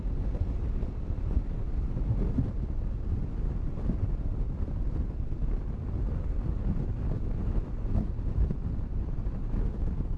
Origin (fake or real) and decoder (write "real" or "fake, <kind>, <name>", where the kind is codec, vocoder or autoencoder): real